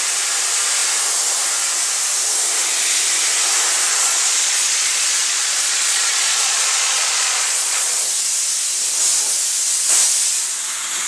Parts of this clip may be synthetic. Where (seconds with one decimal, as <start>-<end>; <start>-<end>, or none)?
3.9-8.0